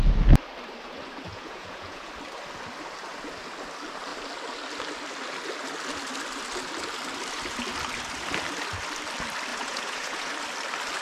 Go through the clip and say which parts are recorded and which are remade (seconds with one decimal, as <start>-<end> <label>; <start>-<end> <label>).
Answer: 0.0-1.3 recorded; 1.3-2.1 remade; 2.1-9.5 recorded; 9.5-10.3 remade; 10.3-11.0 recorded